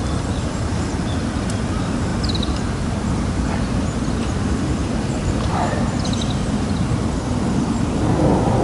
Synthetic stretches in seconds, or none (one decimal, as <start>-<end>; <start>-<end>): 2.1-3.4; 4.8-5.8